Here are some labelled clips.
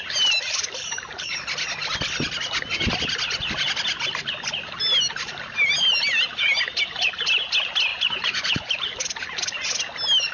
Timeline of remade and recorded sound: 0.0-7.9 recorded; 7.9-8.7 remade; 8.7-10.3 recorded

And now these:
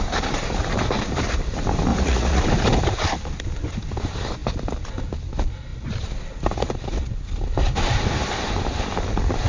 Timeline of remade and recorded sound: 0.0-1.9 recorded; 1.9-2.4 remade; 2.4-9.5 recorded